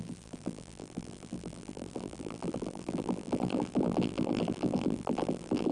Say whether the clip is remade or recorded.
remade